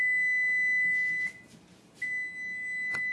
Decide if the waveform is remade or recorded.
recorded